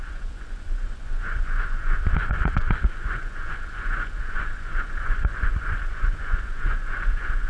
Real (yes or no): no